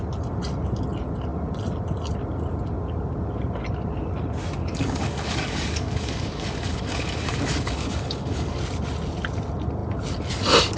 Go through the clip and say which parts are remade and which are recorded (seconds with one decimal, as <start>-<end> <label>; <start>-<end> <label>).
0.0-4.6 recorded; 4.6-8.6 remade; 8.6-10.8 recorded